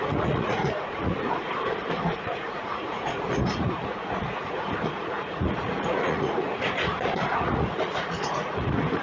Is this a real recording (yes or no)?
no